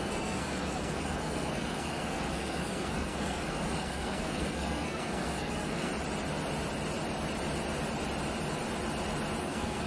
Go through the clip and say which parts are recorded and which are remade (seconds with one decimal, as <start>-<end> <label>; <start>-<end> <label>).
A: 0.0-5.9 remade; 5.9-9.4 recorded; 9.4-9.9 remade